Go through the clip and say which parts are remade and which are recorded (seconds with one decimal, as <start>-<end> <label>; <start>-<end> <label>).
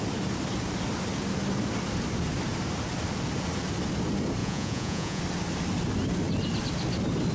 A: 0.0-4.4 recorded; 4.4-5.2 remade; 5.2-7.3 recorded